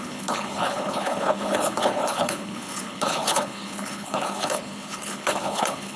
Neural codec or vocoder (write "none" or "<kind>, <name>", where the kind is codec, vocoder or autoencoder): codec, HILCodec